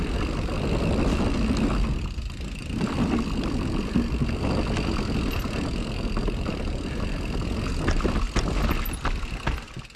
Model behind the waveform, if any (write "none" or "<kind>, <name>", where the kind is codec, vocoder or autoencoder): none